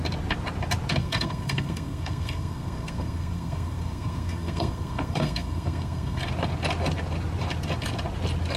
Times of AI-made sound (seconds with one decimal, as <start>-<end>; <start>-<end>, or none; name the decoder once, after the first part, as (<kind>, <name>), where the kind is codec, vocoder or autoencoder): 1.0-6.2 (codec, SNAC)